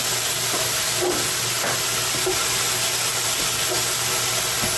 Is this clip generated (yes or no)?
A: no